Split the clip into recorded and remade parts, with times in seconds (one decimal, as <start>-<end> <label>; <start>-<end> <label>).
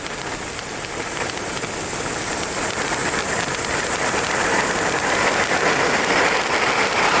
0.0-7.2 recorded